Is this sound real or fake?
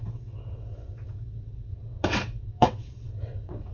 fake